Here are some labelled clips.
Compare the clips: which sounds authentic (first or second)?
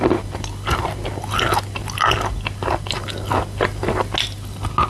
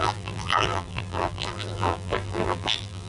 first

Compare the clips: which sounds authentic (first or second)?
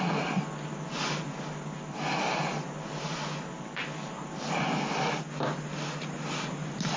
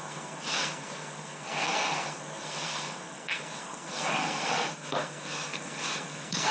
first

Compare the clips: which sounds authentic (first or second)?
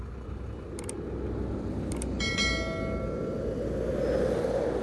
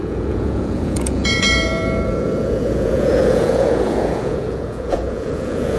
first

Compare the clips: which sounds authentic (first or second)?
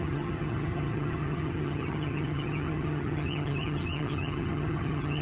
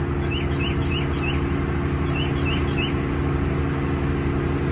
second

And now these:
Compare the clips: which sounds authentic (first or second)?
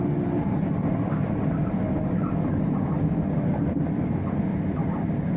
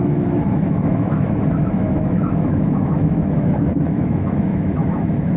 first